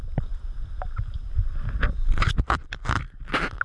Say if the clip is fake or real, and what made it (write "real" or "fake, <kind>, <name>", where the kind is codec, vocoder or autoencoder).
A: fake, vocoder, BigVGAN v2